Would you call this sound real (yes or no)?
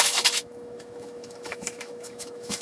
no